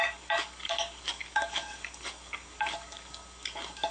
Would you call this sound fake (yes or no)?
yes